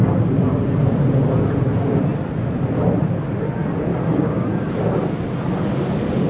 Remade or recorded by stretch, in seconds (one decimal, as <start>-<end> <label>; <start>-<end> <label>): 0.0-3.9 recorded; 3.9-4.7 remade; 4.7-6.3 recorded